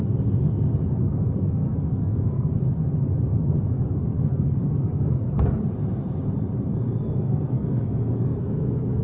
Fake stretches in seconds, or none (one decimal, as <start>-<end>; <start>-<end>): 1.0-2.5; 3.3-5.5; 6.7-9.0